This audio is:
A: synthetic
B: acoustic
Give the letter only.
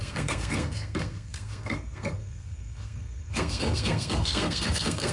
A